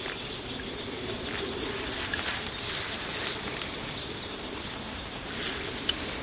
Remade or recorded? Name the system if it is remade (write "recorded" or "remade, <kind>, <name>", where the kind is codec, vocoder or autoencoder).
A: recorded